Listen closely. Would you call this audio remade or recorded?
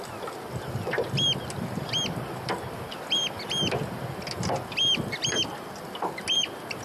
recorded